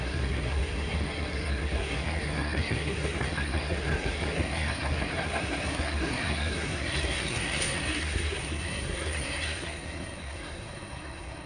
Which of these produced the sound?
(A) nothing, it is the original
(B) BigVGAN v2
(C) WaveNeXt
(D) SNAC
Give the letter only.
D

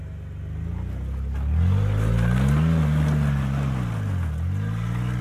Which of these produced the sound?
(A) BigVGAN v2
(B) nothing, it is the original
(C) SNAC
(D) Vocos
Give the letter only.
B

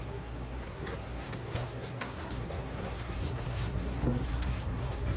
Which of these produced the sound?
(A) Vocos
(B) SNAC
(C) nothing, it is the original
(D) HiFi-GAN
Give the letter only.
B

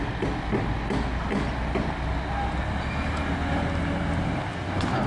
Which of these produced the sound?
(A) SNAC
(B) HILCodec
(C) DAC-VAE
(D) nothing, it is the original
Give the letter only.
D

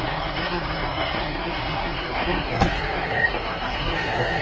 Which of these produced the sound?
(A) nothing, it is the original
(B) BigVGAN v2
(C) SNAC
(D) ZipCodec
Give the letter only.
C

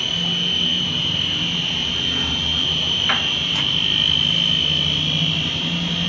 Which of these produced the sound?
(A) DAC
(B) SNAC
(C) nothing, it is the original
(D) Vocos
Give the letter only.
C